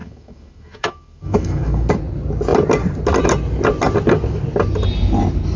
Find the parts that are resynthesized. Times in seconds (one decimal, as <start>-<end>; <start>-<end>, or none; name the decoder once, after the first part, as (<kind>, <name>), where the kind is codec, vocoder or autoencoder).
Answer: 0.0-1.9 (autoencoder, DAC-VAE)